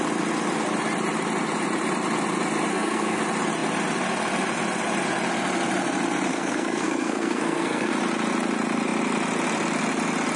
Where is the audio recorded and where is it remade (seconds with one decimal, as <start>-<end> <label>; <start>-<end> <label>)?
0.0-2.7 recorded; 2.7-3.2 remade; 3.2-6.3 recorded; 6.3-7.9 remade; 7.9-10.4 recorded